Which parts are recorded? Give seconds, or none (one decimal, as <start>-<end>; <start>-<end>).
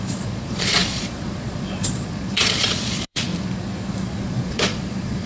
3.3-4.0